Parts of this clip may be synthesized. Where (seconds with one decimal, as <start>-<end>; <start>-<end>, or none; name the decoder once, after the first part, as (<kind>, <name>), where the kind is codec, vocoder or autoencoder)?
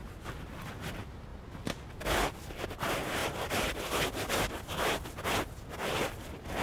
none